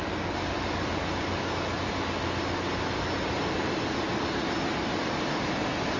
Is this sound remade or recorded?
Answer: recorded